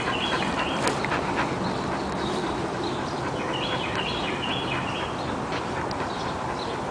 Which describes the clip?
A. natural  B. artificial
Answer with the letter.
A